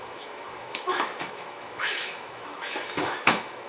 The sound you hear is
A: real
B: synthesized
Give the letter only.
B